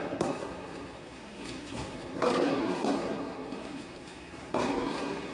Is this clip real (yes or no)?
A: no